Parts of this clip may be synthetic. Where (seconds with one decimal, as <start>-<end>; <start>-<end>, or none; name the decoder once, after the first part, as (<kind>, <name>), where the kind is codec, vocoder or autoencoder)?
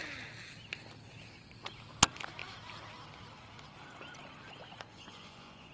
4.9-5.7 (vocoder, Vocos)